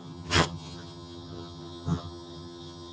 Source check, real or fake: fake